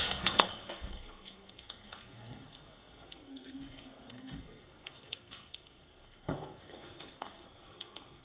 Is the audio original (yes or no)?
no